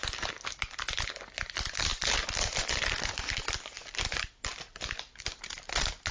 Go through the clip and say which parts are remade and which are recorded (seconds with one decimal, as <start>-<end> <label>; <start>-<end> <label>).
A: 0.0-6.1 recorded